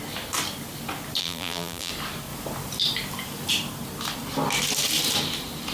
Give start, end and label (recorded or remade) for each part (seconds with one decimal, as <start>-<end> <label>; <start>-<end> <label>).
0.0-1.2 recorded; 1.2-1.9 remade; 1.9-5.7 recorded